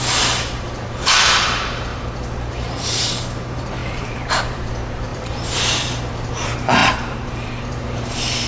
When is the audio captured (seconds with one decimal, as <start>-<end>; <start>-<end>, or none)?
none